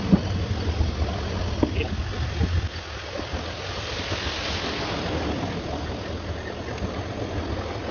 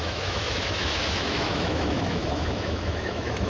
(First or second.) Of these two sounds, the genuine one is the first